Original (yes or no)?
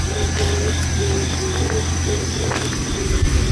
yes